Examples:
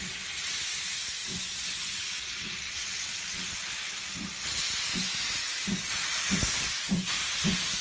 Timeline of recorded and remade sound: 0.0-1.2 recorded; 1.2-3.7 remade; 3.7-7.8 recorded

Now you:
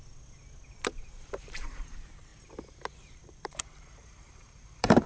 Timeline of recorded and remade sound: 0.0-1.0 recorded; 1.0-2.3 remade; 2.3-3.0 recorded; 3.0-5.1 remade

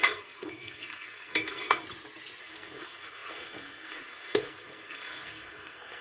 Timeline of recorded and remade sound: 0.0-1.8 remade; 1.8-2.4 recorded; 2.4-6.0 remade

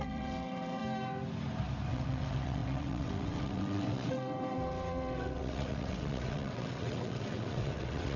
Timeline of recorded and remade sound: 0.0-0.8 remade; 0.8-1.9 recorded; 1.9-8.2 remade